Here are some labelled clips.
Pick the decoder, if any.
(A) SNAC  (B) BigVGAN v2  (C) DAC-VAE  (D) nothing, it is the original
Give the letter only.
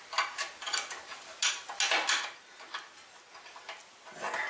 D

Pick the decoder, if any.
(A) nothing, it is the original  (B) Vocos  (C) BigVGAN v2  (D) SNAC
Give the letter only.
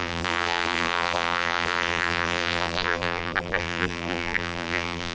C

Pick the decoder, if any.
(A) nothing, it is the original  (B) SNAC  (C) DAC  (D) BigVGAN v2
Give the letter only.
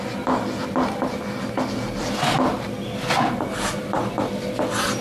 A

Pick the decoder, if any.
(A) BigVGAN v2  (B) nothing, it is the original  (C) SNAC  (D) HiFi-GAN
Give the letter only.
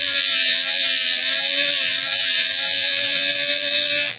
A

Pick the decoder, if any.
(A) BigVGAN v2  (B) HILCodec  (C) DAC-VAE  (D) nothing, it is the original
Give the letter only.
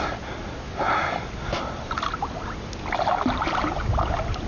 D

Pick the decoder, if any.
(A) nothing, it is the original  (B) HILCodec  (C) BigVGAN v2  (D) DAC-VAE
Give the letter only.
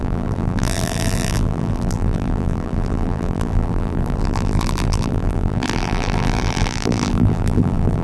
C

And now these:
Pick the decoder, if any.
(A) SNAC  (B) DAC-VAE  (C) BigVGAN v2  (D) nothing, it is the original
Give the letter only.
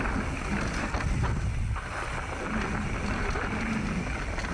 D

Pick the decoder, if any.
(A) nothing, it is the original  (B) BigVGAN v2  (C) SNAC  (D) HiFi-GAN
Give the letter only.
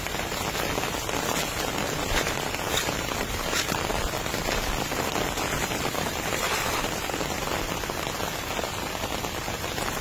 B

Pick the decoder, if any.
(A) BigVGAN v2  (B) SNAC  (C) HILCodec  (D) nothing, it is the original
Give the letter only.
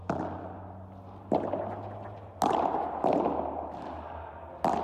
D